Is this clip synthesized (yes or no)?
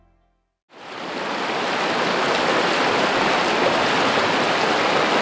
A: no